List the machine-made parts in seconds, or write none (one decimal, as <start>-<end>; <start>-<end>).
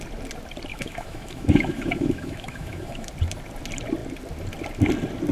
0.7-3.1